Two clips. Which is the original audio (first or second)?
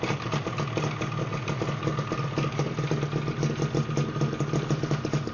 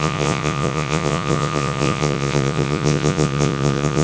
first